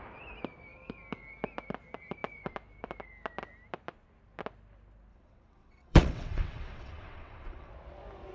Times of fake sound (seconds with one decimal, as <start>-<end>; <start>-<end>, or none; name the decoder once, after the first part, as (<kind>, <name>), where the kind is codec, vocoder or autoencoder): 5.1-7.7 (vocoder, WaveNeXt)